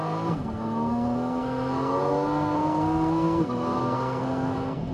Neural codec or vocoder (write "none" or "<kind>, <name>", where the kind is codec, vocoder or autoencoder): codec, SNAC